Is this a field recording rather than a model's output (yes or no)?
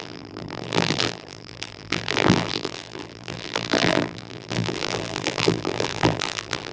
no